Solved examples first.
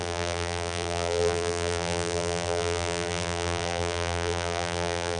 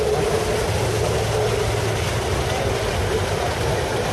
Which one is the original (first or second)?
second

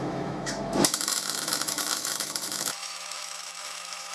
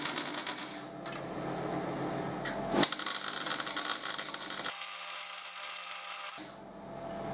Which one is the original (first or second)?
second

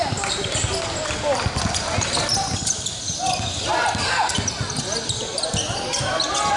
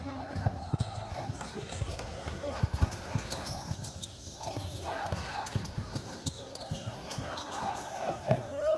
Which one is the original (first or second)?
first